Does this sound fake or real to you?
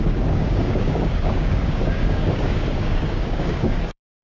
fake